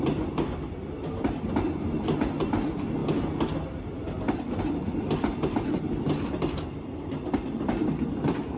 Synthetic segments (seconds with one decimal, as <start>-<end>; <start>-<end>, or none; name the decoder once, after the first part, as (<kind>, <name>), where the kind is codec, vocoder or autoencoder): none

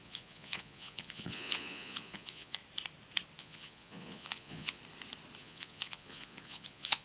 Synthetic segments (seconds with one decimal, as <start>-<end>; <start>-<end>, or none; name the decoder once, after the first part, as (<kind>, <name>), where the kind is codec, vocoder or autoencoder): 0.0-2.6 (vocoder, Vocos); 3.4-4.8; 5.4-7.0

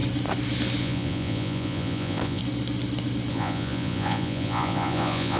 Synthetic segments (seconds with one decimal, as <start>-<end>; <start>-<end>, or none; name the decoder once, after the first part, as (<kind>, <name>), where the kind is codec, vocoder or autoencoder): 0.8-2.4 (vocoder, Vocos); 3.3-5.4